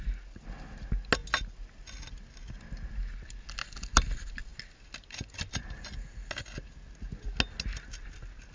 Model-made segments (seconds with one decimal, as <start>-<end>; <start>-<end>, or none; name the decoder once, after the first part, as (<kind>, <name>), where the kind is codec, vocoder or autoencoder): none